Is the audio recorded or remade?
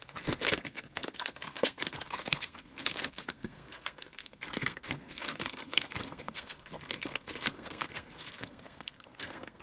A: remade